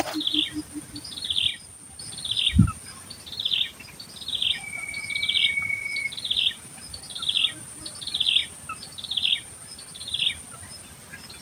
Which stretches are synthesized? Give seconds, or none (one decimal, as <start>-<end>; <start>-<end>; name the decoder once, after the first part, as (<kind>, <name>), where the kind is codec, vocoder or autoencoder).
1.5-2.0 (vocoder, BigVGAN v2)